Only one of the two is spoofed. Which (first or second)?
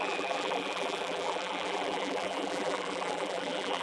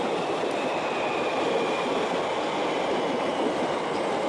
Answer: first